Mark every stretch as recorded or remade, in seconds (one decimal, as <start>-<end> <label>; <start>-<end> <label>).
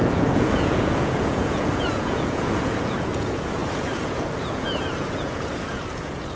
0.0-6.3 remade